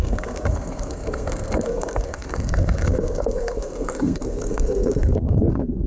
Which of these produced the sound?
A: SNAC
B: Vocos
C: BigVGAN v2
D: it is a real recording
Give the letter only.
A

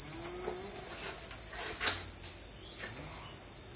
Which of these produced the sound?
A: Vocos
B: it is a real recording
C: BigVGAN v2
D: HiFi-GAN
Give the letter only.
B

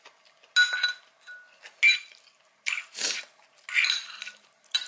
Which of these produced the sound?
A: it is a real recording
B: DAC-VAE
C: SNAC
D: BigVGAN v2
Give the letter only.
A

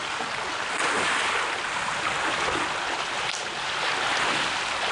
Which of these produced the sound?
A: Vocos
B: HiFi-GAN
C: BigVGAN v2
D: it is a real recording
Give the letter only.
D